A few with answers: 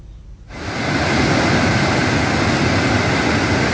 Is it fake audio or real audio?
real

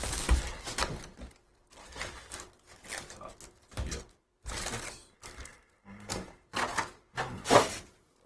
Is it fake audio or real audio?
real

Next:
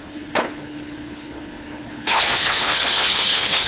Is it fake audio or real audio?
fake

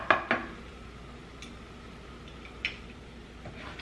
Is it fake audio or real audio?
real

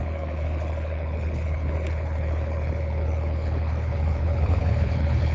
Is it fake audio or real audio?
fake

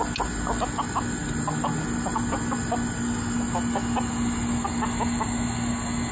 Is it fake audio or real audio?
real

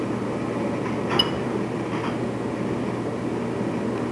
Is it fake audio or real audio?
real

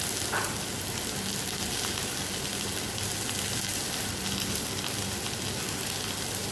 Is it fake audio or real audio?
real